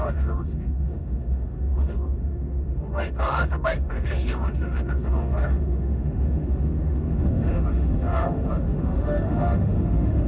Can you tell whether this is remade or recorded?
remade